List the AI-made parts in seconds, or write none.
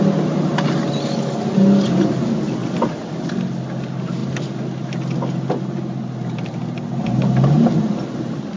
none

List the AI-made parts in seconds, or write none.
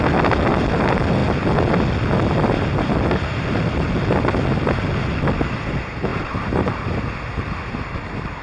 none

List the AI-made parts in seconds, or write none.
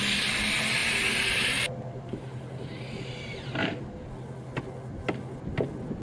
0.8-3.8 (vocoder, BigVGAN v2)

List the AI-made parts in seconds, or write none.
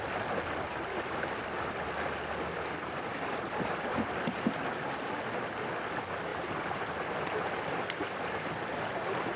6.3-6.8 (vocoder, BigVGAN v2)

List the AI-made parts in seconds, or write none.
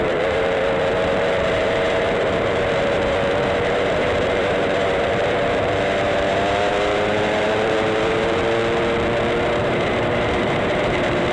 0.0-8.6 (vocoder, BigVGAN v2); 9.6-11.3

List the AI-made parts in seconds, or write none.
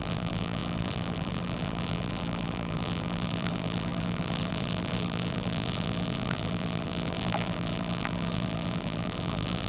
0.0-9.7 (vocoder, BigVGAN v2)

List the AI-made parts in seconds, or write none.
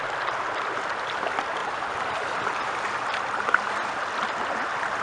1.6-3.6 (vocoder, BigVGAN v2)